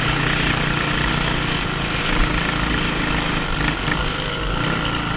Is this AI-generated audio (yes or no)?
no